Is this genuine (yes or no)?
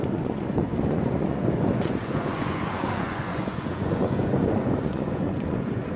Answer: no